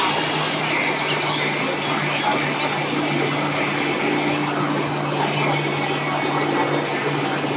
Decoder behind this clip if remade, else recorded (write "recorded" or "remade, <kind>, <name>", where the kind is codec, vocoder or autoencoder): recorded